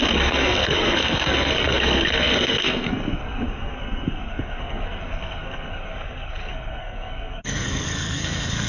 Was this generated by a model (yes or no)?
yes